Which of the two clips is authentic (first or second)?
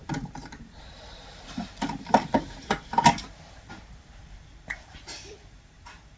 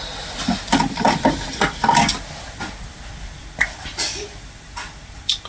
second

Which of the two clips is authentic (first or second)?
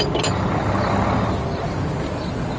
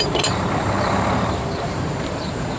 first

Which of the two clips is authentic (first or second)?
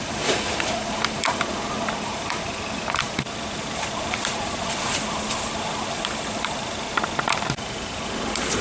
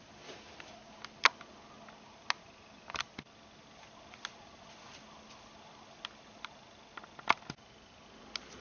second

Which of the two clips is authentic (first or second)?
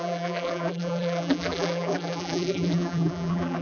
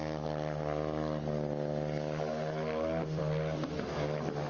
second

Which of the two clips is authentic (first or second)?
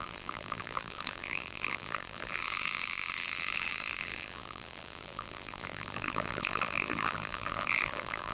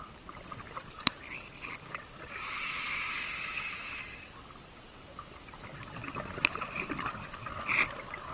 second